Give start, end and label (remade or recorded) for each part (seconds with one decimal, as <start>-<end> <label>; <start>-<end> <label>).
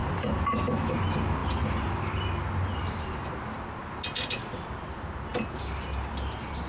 0.0-0.6 remade; 0.6-6.7 recorded